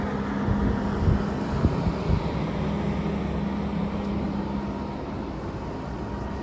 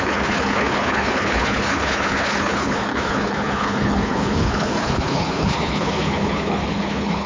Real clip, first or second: first